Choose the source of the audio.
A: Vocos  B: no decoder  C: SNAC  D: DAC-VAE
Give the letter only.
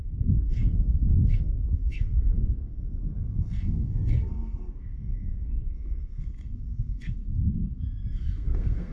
C